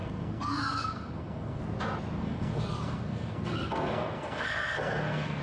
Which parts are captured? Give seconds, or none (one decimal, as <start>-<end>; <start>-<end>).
1.6-2.2